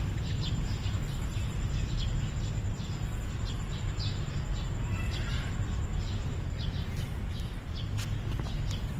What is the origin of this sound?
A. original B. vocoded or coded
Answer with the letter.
A